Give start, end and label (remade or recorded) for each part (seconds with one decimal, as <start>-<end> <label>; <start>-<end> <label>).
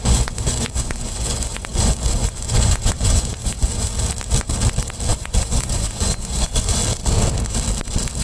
0.0-3.9 remade; 3.9-5.1 recorded; 5.1-6.8 remade; 6.8-8.2 recorded